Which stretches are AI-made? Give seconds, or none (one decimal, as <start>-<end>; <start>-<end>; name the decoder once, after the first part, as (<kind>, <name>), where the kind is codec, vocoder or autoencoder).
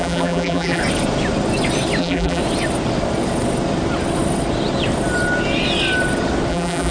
0.0-0.8 (vocoder, BigVGAN v2); 2.0-2.4; 6.5-6.9